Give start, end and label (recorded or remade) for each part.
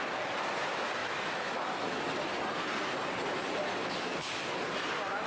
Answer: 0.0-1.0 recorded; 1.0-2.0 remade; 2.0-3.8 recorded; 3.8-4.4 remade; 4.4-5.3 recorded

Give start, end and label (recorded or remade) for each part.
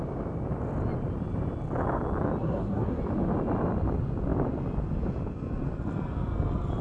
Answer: 0.0-2.4 recorded; 2.4-3.0 remade; 3.0-6.8 recorded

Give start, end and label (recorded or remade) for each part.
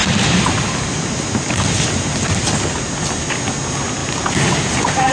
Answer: 0.0-5.1 recorded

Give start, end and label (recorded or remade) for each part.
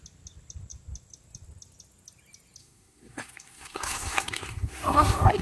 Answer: 0.0-2.6 recorded; 2.6-5.4 remade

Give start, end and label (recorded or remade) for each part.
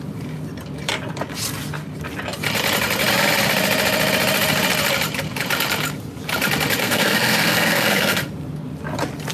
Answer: 0.0-6.8 recorded; 6.8-8.2 remade; 8.2-9.3 recorded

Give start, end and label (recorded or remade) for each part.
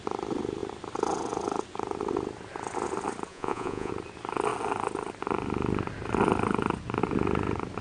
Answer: 0.0-3.3 recorded; 3.3-3.9 remade; 3.9-7.8 recorded